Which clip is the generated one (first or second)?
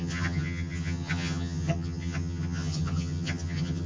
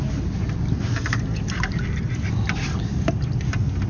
first